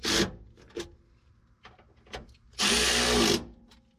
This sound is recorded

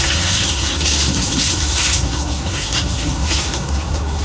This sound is remade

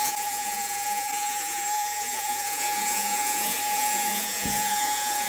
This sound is remade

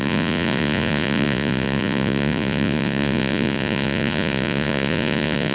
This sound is remade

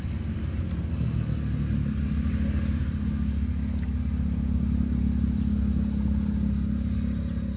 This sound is recorded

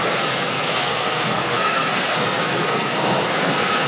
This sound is remade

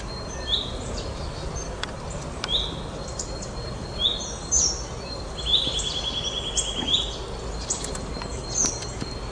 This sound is recorded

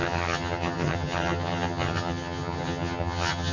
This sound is remade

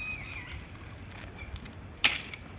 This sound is recorded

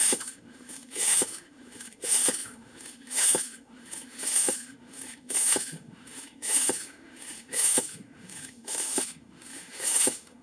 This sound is remade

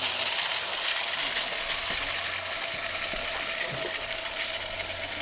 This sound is recorded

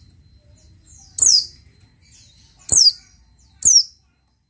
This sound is recorded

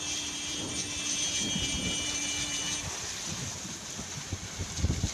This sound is remade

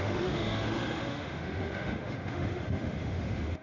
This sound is remade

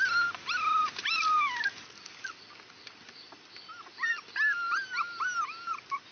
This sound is recorded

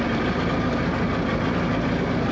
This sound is recorded